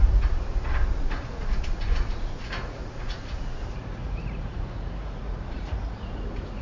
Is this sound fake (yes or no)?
yes